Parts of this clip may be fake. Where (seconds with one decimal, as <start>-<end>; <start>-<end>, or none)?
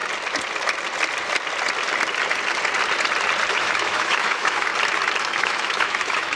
3.5-4.7; 5.2-6.4